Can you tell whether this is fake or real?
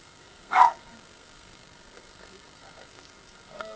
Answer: fake